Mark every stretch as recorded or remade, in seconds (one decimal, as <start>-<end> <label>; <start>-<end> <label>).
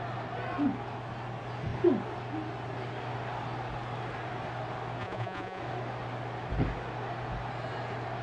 0.0-5.0 recorded; 5.0-5.6 remade; 5.6-8.2 recorded